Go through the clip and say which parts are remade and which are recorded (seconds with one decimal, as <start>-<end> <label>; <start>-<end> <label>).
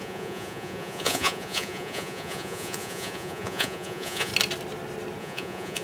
0.0-4.3 remade; 4.3-5.2 recorded; 5.2-5.8 remade